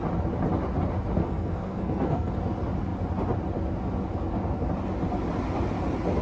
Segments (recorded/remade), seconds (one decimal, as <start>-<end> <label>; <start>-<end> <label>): 0.0-1.2 recorded; 1.2-2.3 remade; 2.3-6.2 recorded